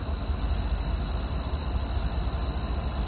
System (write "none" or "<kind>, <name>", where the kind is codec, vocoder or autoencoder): none